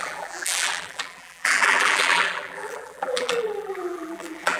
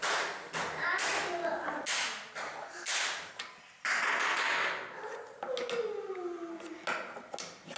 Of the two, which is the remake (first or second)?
first